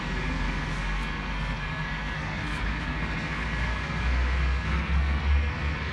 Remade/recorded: remade